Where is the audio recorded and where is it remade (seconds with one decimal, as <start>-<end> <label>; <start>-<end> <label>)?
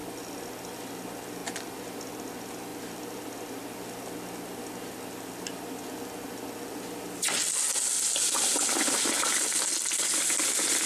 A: 0.0-10.9 recorded